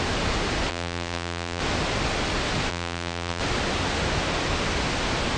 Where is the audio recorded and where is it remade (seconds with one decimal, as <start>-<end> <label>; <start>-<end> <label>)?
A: 0.0-0.7 recorded; 0.7-1.6 remade; 1.6-2.7 recorded; 2.7-3.4 remade; 3.4-5.4 recorded